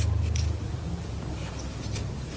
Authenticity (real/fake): real